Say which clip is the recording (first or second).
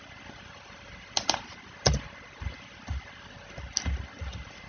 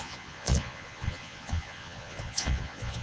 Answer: first